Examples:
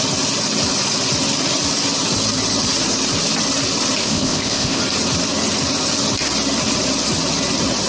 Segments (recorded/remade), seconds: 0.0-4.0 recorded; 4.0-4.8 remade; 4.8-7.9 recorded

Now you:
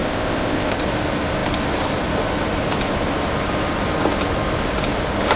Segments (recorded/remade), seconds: 0.0-0.8 remade; 0.8-5.4 recorded

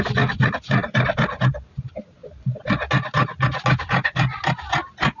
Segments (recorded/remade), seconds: 0.0-5.2 recorded

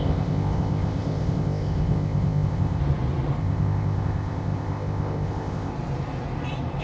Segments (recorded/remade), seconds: 0.0-2.8 remade; 2.8-3.4 recorded; 3.4-5.7 remade; 5.7-6.8 recorded

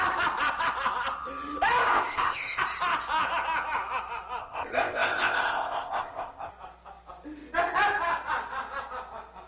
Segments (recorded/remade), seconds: 0.0-1.9 recorded; 1.9-2.6 remade; 2.6-4.4 recorded; 4.4-6.5 remade; 6.5-9.5 recorded

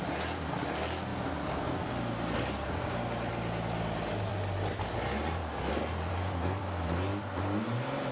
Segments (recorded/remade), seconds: 0.0-8.1 recorded